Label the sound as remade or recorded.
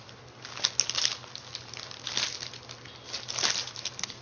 recorded